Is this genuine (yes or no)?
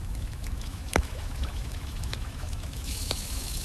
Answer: no